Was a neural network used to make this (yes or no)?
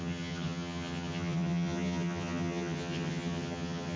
yes